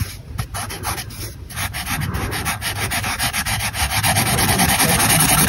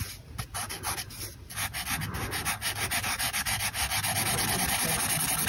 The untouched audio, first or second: second